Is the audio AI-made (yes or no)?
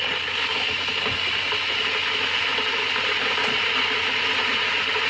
no